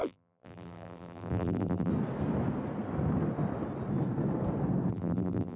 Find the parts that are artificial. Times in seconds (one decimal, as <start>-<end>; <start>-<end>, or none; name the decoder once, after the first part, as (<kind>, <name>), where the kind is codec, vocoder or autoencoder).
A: 0.0-1.9 (vocoder, BigVGAN v2); 4.9-5.6